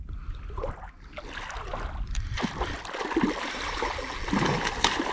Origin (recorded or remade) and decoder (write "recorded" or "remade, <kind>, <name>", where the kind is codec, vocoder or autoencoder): recorded